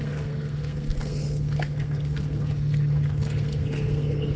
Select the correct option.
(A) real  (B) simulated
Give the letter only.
B